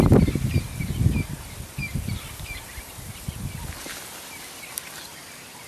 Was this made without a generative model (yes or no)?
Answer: yes